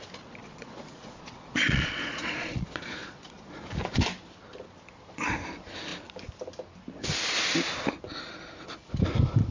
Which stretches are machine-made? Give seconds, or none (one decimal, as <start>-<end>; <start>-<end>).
0.4-3.8